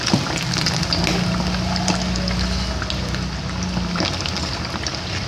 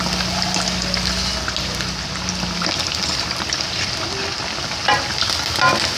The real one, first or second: first